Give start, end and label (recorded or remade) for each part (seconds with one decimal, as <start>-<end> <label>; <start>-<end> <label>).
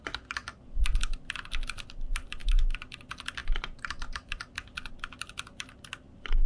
0.0-6.5 recorded